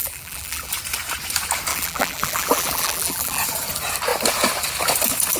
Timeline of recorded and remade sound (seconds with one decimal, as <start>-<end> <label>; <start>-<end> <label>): 0.0-0.7 remade; 0.7-1.7 recorded; 1.7-3.4 remade; 3.4-5.4 recorded